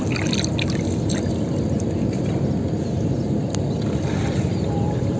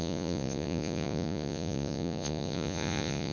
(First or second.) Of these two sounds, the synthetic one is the second